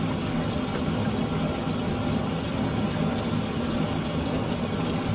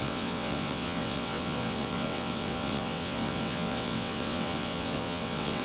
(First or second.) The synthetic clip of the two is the second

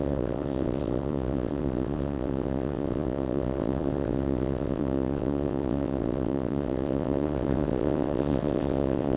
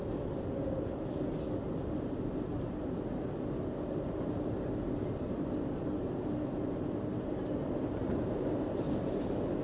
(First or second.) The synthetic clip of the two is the first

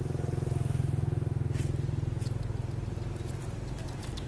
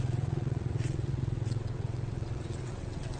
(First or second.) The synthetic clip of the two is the second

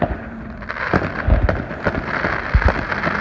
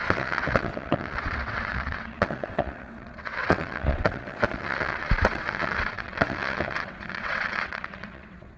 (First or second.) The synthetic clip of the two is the second